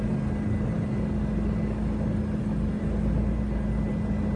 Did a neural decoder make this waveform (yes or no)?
no